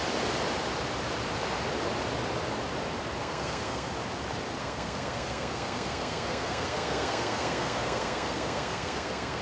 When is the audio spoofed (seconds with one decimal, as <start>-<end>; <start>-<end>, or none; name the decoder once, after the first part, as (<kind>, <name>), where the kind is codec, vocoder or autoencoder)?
3.2-3.9 (codec, SNAC); 4.6-9.4